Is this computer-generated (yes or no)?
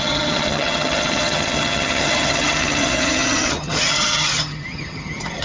yes